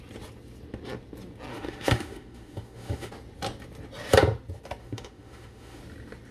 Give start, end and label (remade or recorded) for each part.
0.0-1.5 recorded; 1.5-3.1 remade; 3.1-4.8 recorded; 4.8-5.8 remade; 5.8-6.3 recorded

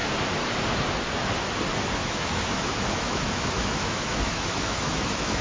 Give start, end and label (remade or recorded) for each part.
0.0-2.0 recorded; 2.0-5.4 remade